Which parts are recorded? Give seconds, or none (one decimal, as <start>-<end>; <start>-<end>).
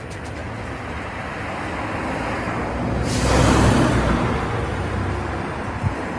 0.0-6.2